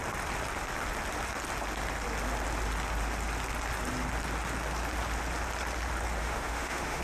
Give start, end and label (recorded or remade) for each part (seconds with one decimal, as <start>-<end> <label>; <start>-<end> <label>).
0.0-6.2 recorded; 6.2-7.0 remade